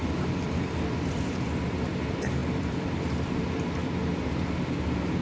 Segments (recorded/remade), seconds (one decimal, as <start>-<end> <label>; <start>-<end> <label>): 0.0-1.6 remade; 1.6-2.4 recorded; 2.4-3.4 remade; 3.4-5.2 recorded